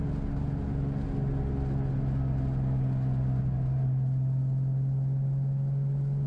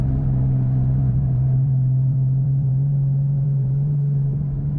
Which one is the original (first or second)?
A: first